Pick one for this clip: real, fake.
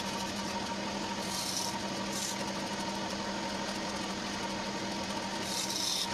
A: real